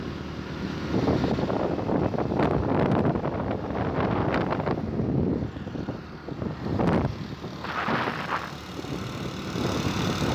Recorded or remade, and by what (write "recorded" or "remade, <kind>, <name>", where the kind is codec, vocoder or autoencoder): recorded